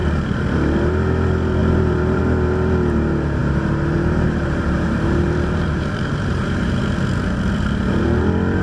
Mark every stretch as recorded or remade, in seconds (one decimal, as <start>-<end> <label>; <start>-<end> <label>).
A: 0.0-0.6 remade; 0.6-1.6 recorded; 1.6-2.2 remade; 2.2-3.4 recorded; 3.4-6.8 remade; 6.8-8.6 recorded